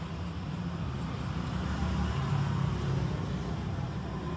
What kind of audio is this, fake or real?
real